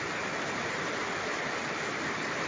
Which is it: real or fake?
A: real